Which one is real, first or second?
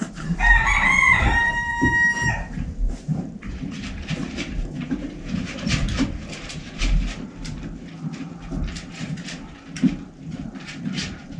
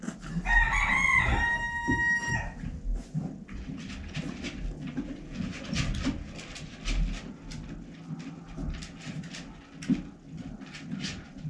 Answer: second